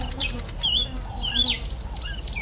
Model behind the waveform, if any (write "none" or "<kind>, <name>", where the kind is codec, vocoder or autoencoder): none